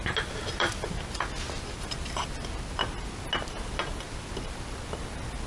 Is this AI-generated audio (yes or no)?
no